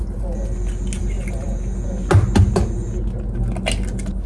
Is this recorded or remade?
recorded